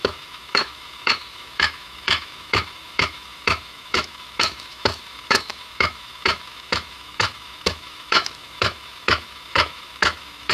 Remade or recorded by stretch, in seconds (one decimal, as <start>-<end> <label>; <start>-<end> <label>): 0.0-10.5 remade